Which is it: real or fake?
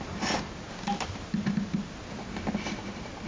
real